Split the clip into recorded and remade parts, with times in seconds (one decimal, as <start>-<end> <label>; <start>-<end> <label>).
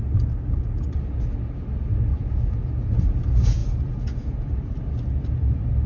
0.0-2.1 recorded; 2.1-2.9 remade; 2.9-3.6 recorded; 3.6-4.5 remade; 4.5-5.9 recorded